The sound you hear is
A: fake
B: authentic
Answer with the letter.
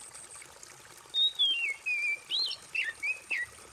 B